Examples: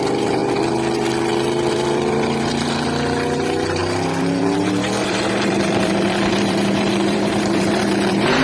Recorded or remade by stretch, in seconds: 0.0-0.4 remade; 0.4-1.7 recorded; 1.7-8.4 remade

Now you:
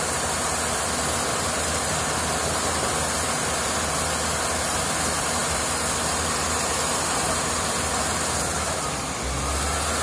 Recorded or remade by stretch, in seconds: 0.0-10.0 recorded

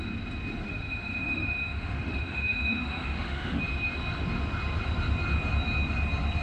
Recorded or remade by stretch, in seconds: 0.0-0.6 recorded; 0.6-3.6 remade; 3.6-6.4 recorded

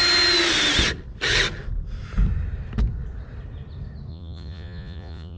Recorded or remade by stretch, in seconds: 0.0-4.1 recorded; 4.1-5.4 remade

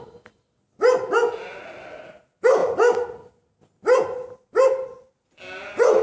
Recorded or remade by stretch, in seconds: 0.0-6.0 recorded

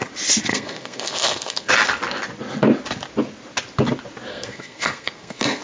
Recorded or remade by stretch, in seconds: 0.0-0.5 recorded; 0.5-1.7 remade; 1.7-4.3 recorded; 4.3-5.6 remade